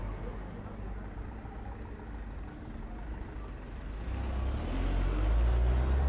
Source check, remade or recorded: recorded